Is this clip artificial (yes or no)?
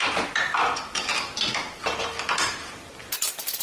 yes